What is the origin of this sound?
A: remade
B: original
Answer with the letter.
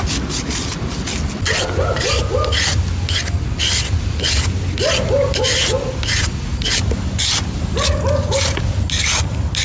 B